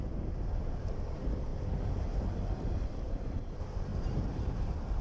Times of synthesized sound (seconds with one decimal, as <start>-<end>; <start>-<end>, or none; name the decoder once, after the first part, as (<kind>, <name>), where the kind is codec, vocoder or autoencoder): 0.0-1.5 (vocoder, BigVGAN v2); 2.5-5.0